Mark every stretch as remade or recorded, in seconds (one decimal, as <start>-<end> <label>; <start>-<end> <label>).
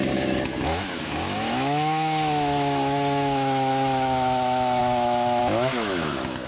0.0-6.5 remade